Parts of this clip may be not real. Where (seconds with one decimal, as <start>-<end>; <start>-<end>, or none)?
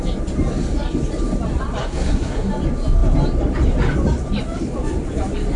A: 1.8-2.5